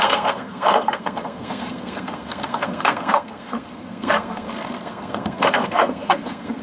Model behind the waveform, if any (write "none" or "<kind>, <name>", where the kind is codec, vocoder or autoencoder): codec, SNAC